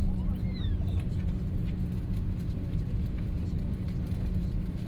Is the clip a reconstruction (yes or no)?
yes